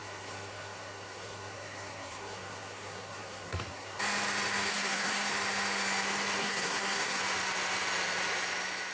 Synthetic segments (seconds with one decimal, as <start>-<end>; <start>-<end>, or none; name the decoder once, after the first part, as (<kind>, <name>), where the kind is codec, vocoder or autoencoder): 0.0-4.0 (codec, SNAC); 4.7-5.3; 6.4-7.2